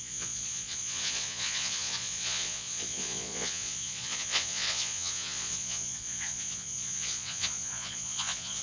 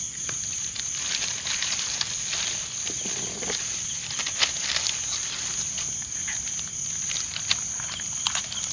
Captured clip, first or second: second